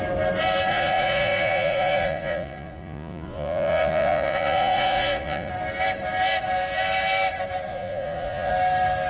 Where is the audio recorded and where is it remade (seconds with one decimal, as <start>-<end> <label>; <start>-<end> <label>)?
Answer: 0.0-0.7 recorded; 0.7-5.5 remade; 5.5-7.7 recorded; 7.7-8.5 remade; 8.5-9.1 recorded